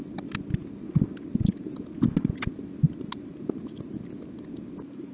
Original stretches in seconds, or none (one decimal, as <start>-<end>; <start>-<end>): 0.0-5.1